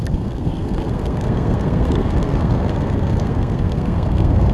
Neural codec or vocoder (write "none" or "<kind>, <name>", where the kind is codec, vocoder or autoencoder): codec, SNAC